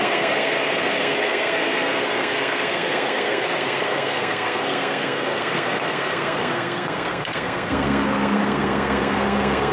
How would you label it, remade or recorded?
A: remade